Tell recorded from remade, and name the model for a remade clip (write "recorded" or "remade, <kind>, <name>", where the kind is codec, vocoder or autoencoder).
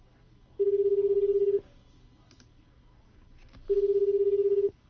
recorded